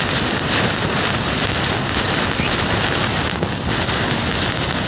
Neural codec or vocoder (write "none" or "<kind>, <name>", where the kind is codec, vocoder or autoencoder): none